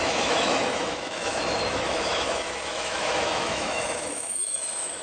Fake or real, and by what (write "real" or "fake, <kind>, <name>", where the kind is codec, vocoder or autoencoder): fake, autoencoder, DAC-VAE